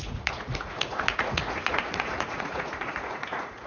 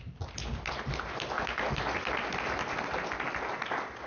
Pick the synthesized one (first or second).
first